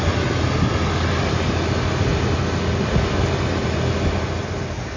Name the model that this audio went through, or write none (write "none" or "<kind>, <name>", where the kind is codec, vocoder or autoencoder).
none